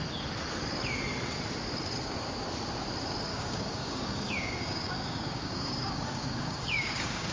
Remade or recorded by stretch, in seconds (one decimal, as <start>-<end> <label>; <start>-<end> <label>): 0.0-3.3 recorded; 3.3-7.3 remade